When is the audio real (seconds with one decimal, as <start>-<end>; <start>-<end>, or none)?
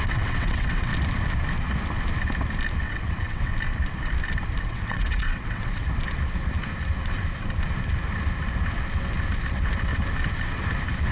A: 0.9-2.8; 3.5-4.6; 5.8-9.5; 9.9-11.1